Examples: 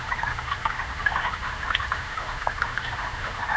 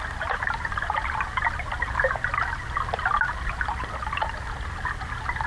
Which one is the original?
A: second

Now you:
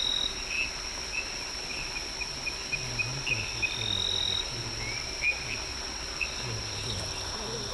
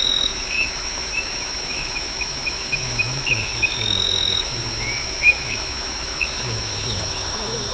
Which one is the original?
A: first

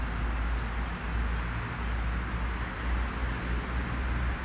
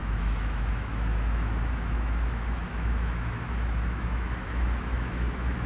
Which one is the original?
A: first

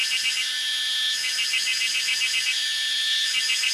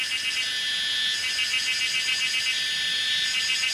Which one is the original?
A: second